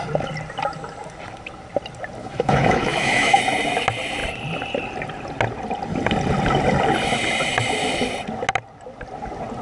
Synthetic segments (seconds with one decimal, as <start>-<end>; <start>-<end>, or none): 2.2-3.4